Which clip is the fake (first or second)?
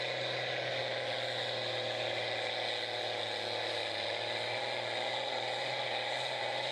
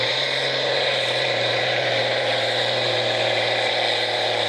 second